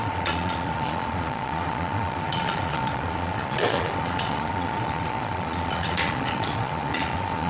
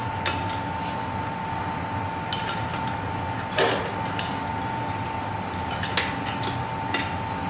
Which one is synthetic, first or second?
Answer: first